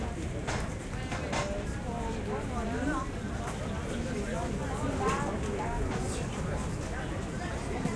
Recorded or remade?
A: recorded